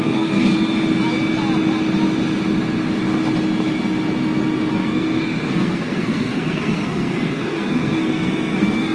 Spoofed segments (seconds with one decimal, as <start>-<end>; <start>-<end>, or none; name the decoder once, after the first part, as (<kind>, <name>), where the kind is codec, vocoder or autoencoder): 0.0-0.5 (codec, SNAC); 4.7-8.9